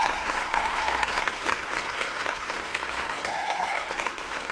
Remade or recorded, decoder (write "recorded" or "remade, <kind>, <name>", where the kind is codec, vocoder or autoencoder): remade, codec, SNAC